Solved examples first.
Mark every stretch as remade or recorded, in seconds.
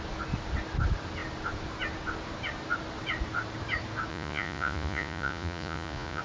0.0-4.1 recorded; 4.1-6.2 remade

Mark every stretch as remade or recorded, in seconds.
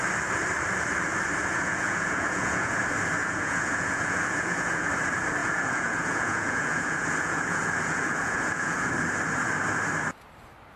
0.0-1.4 recorded; 1.4-2.8 remade; 2.8-3.2 recorded; 3.2-4.9 remade; 4.9-5.4 recorded; 5.4-8.9 remade; 8.9-10.8 recorded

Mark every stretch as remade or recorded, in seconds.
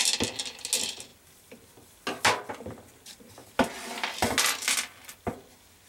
0.0-5.9 recorded